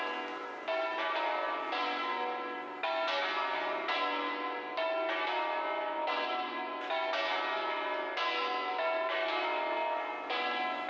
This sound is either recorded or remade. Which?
recorded